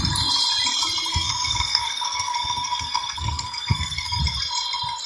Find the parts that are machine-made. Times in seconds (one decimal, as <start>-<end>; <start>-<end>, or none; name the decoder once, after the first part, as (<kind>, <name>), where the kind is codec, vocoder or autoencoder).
1.1-4.2 (codec, SNAC)